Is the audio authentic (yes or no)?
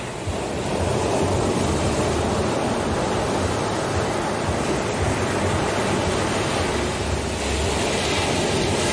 yes